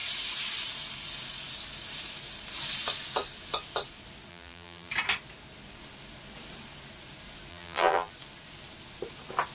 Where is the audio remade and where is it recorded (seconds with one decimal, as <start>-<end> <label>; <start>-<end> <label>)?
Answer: 0.0-4.3 recorded; 4.3-4.9 remade; 4.9-7.5 recorded; 7.5-8.1 remade; 8.1-9.5 recorded